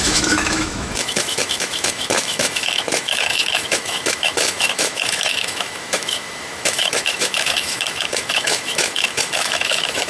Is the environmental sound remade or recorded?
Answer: remade